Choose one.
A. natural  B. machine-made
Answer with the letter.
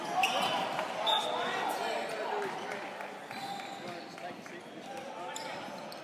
A